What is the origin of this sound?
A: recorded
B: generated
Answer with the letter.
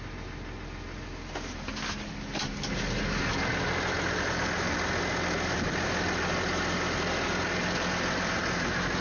A